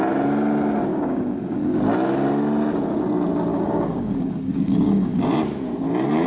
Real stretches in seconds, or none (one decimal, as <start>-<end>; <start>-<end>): 0.0-0.9; 1.8-3.5; 5.2-6.3